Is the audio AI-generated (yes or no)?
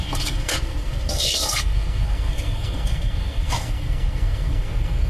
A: yes